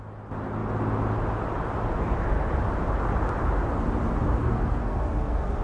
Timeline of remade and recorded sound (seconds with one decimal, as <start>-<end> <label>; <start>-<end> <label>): 0.0-4.4 recorded; 4.4-5.6 remade